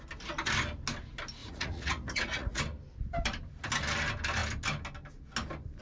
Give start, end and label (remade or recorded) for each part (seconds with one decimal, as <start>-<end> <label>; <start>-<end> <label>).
0.0-1.4 recorded; 1.4-2.6 remade; 2.6-5.8 recorded